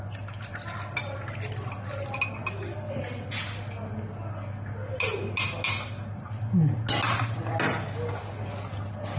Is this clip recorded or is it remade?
recorded